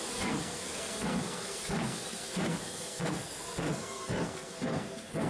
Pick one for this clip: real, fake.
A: fake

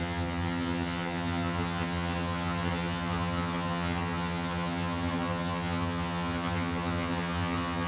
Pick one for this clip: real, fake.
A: fake